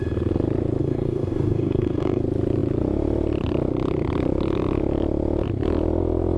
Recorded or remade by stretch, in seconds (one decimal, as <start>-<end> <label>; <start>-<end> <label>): 0.0-0.8 recorded; 0.8-2.2 remade; 2.2-6.4 recorded